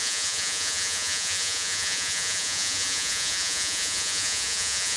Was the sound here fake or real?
fake